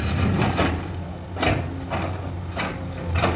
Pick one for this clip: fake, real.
real